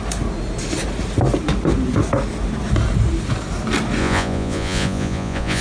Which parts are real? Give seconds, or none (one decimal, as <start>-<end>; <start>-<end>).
0.0-4.0